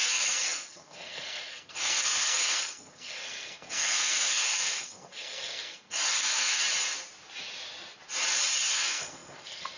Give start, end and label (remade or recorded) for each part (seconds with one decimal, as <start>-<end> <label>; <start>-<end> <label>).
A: 0.0-6.6 remade; 6.6-8.7 recorded; 8.7-9.8 remade